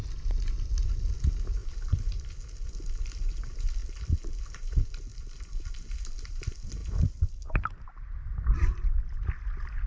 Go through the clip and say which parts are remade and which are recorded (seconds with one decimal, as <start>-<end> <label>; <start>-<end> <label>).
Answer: 0.0-1.6 recorded; 1.6-2.3 remade; 2.3-5.1 recorded; 5.1-5.7 remade; 5.7-9.9 recorded